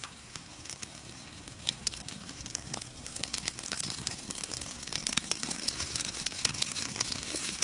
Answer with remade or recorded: remade